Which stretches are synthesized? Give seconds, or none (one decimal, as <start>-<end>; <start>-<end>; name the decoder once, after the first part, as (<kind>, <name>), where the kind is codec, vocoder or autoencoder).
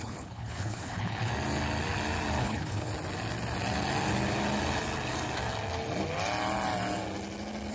0.0-1.3 (codec, HILCodec); 2.4-2.9